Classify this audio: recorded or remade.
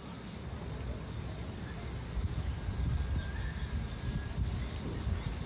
recorded